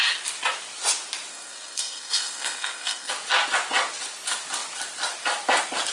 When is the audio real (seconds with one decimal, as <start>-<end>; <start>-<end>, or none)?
0.0-1.3; 3.1-5.9